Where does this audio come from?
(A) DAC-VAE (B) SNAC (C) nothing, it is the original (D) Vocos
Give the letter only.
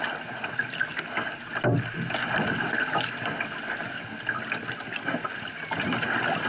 C